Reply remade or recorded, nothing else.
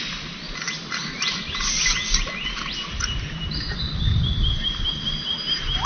recorded